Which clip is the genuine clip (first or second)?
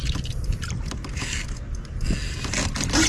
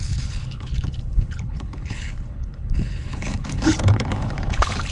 first